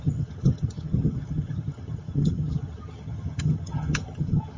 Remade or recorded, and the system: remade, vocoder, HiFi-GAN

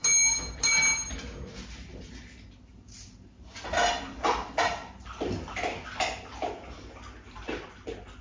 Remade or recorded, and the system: recorded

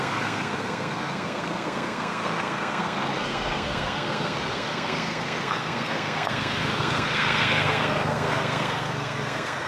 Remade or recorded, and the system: remade, codec, SNAC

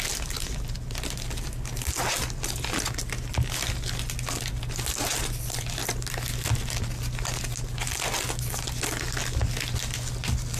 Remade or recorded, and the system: recorded